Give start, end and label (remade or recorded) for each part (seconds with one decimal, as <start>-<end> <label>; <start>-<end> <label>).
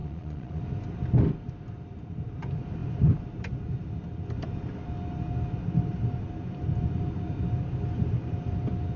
0.0-0.6 remade; 0.6-9.0 recorded